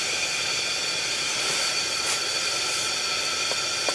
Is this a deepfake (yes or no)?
no